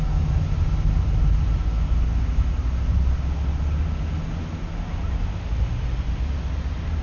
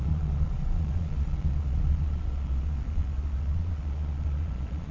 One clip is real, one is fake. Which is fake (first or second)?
second